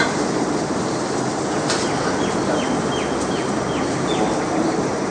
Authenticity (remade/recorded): remade